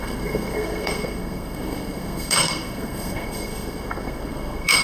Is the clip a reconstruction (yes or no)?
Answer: yes